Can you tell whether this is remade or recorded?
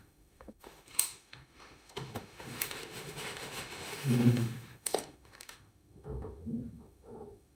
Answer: remade